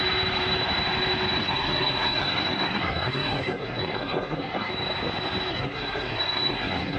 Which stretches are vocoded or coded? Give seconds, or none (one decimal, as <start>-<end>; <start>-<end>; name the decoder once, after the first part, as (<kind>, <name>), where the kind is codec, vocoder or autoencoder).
1.4-4.7 (codec, SNAC); 5.5-7.0